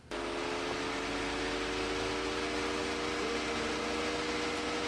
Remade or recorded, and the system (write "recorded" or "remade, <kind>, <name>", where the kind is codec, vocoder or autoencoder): recorded